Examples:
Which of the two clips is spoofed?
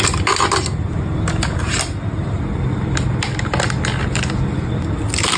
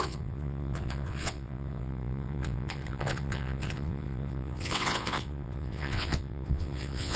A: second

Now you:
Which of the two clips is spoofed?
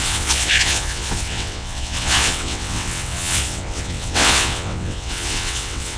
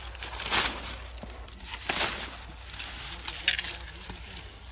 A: first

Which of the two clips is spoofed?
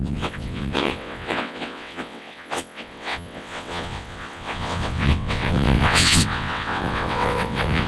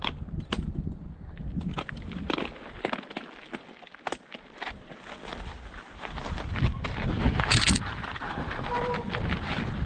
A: first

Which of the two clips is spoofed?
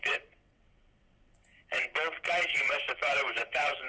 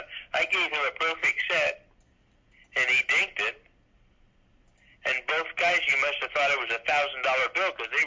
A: first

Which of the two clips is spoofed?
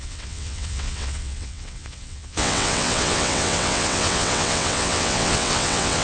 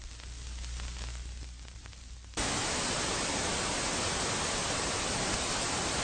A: first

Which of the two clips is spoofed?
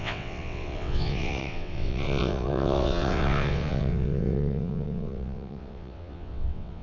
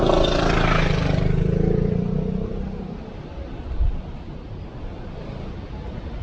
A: first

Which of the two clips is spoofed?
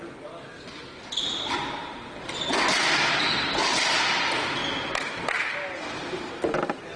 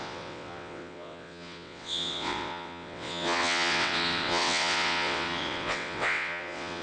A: second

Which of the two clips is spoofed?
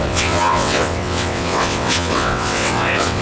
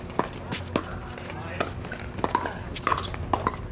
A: first